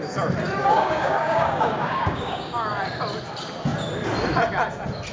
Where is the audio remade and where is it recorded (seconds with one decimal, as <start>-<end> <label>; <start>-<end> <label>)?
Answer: 0.0-0.6 recorded; 0.6-2.7 remade; 2.7-5.1 recorded